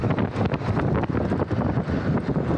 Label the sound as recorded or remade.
recorded